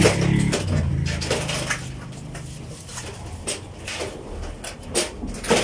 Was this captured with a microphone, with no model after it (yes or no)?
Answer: yes